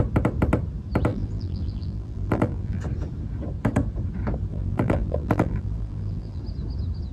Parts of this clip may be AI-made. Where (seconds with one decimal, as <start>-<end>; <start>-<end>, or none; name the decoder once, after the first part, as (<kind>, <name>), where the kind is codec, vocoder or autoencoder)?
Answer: 1.1-2.8 (vocoder, BigVGAN v2); 4.5-6.4